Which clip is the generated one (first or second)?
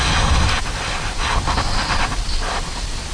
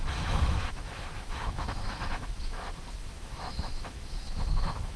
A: second